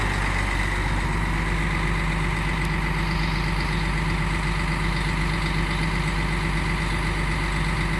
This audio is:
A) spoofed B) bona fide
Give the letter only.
B